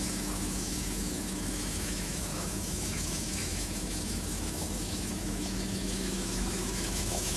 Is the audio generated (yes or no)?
yes